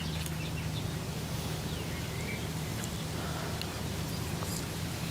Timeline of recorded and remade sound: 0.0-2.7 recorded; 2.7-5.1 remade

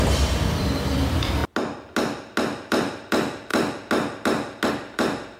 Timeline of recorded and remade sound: 0.0-1.4 remade; 1.4-2.7 recorded; 2.7-3.5 remade; 3.5-4.7 recorded; 4.7-5.4 remade

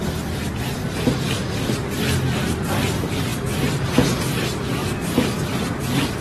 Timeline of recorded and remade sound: 0.0-0.8 recorded; 0.8-1.9 remade; 1.9-4.8 recorded; 4.8-6.2 remade

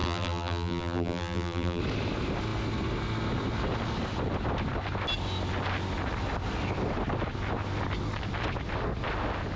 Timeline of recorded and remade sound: 0.0-1.8 remade; 1.8-9.6 recorded

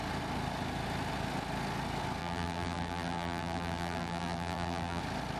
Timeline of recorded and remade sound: 0.0-2.2 recorded; 2.2-5.0 remade; 5.0-5.4 recorded

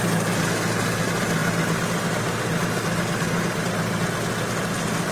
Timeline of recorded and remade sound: 0.0-5.1 recorded